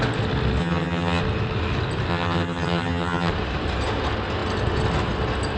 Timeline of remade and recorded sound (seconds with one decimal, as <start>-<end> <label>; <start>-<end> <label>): 0.0-0.6 recorded; 0.6-1.2 remade; 1.2-2.1 recorded; 2.1-3.3 remade; 3.3-5.6 recorded